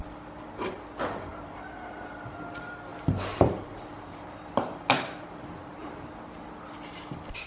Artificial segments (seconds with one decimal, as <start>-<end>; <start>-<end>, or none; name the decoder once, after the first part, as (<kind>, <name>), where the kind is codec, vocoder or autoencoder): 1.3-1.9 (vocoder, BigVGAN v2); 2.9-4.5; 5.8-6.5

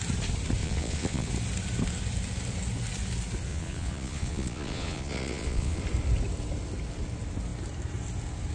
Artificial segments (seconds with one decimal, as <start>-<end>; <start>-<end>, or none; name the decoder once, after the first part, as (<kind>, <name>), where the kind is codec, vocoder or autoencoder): 0.6-1.3 (vocoder, Vocos); 3.5-5.8

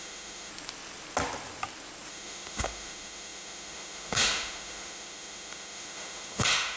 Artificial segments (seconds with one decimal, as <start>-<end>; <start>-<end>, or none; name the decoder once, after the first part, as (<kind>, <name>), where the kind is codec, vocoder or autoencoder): 0.0-0.5 (autoencoder, DAC-VAE); 2.1-6.8

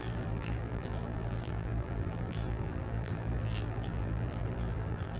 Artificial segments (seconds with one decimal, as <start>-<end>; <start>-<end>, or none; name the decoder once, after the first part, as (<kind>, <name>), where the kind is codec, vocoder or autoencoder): 0.0-5.2 (vocoder, BigVGAN v2)